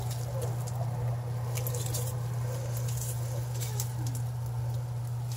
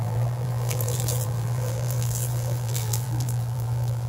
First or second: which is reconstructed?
second